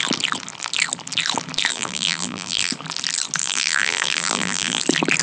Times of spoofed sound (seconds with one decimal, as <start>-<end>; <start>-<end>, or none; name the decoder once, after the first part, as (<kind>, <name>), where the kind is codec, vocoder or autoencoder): 1.7-2.7 (vocoder, BigVGAN v2); 3.4-4.8